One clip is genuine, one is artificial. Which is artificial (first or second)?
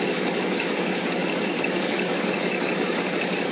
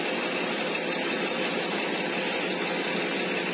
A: first